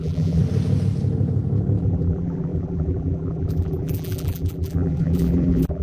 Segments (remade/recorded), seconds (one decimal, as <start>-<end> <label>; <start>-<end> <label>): 0.0-0.4 remade; 0.4-1.8 recorded; 1.8-5.8 remade

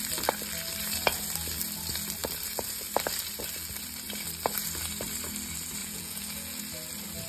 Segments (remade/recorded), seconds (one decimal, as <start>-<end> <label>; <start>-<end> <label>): 0.0-5.8 recorded; 5.8-6.6 remade; 6.6-7.3 recorded